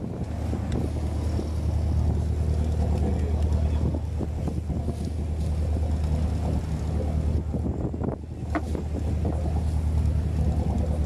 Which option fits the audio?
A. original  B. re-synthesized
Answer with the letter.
A